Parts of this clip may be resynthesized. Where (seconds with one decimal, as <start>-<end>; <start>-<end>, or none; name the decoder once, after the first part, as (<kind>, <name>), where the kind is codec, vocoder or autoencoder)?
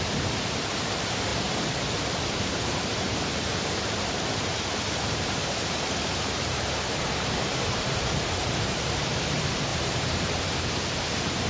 0.0-1.3 (vocoder, BigVGAN v2); 2.4-11.5